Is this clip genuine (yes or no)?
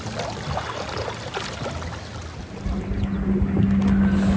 yes